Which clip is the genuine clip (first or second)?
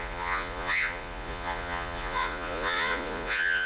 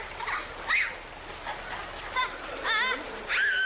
second